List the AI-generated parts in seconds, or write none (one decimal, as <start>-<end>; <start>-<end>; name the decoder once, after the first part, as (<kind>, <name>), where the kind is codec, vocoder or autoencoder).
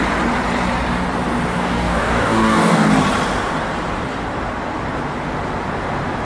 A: 1.5-2.9 (codec, DAC)